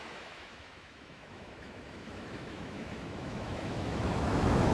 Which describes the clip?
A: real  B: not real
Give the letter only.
B